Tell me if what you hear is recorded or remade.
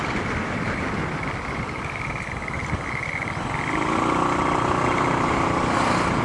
recorded